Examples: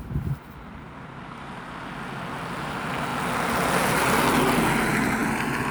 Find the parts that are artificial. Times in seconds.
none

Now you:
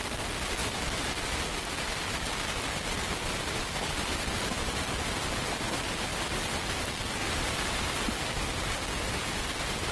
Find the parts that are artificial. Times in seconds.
7.2-8.1

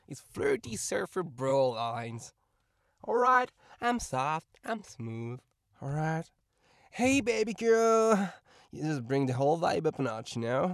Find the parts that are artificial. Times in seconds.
0.0-1.5; 2.9-3.4; 4.1-4.8; 10.0-10.7

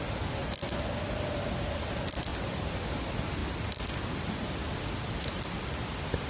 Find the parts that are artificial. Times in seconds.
2.3-2.9

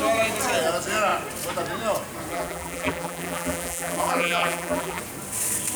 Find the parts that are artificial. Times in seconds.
2.3-5.0

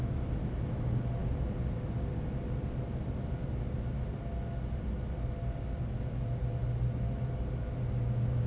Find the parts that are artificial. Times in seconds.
none